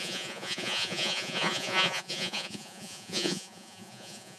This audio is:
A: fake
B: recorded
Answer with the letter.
A